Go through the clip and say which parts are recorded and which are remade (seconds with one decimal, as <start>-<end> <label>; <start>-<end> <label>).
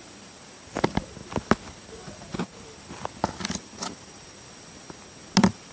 0.0-5.7 recorded